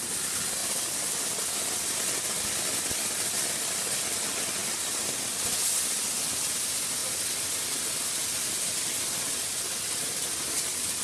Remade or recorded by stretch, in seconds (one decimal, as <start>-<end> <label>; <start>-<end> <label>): 0.0-4.6 recorded; 4.6-5.2 remade; 5.2-11.0 recorded